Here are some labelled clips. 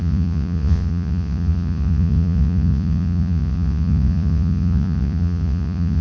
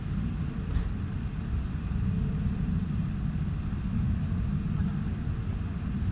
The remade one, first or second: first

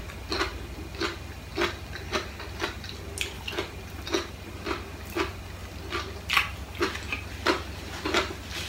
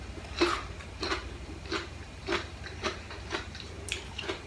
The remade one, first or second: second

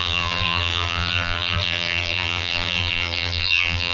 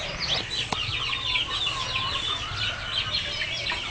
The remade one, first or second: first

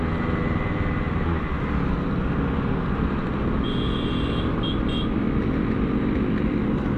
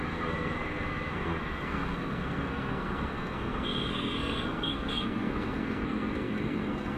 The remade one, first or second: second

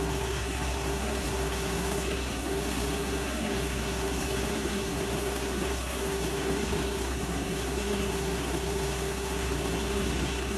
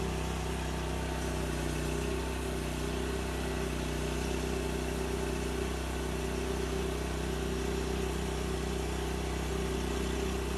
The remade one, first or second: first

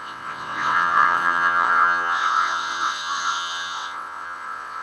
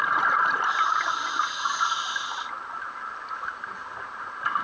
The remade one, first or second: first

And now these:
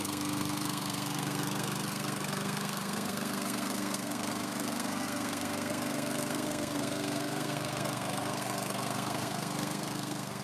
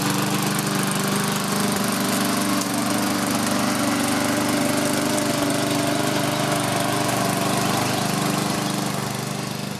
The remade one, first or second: first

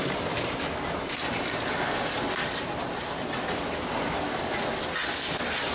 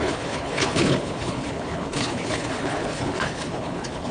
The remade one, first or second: second